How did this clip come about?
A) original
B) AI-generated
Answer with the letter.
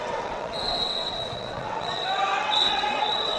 B